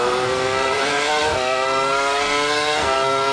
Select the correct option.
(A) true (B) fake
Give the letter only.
B